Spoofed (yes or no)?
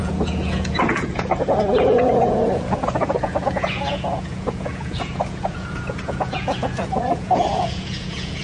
yes